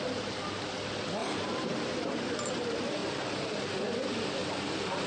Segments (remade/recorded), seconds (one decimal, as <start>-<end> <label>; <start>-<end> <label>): 0.0-1.2 recorded; 1.2-2.5 remade; 2.5-3.0 recorded; 3.0-3.6 remade; 3.6-4.4 recorded; 4.4-5.1 remade